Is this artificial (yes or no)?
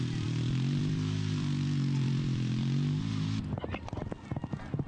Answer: yes